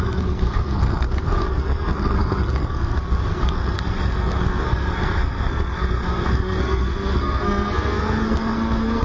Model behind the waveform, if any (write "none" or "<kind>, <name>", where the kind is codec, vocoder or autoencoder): codec, SNAC